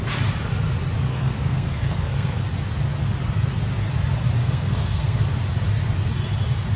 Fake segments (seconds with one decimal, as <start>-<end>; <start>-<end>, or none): 1.1-2.4; 4.4-5.2